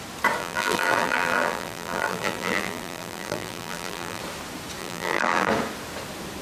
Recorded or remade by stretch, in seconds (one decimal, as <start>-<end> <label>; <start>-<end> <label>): 0.0-0.4 recorded; 0.4-4.2 remade; 4.2-4.8 recorded; 4.8-5.5 remade; 5.5-6.4 recorded

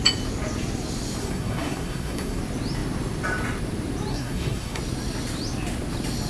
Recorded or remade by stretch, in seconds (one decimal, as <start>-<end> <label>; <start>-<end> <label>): 0.0-1.2 recorded; 1.2-2.4 remade; 2.4-4.1 recorded; 4.1-4.8 remade; 4.8-6.3 recorded

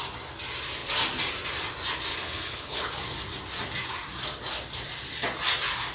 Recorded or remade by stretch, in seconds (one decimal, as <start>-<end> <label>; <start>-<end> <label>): 0.0-2.1 recorded; 2.1-2.9 remade; 2.9-5.9 recorded

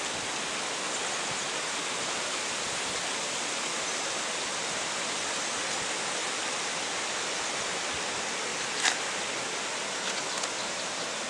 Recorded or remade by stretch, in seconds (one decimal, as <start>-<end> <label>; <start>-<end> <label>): 0.0-6.2 recorded; 6.2-6.7 remade; 6.7-8.5 recorded; 8.5-10.2 remade; 10.2-11.3 recorded

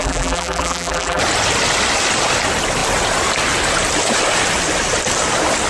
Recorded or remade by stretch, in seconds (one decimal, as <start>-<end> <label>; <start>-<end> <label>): 0.0-1.2 remade; 1.2-5.7 recorded

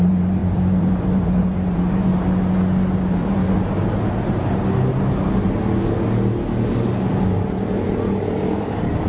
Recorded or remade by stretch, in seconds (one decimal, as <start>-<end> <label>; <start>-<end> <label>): 0.0-2.1 remade; 2.1-3.0 recorded; 3.0-3.4 remade; 3.4-7.2 recorded; 7.2-9.1 remade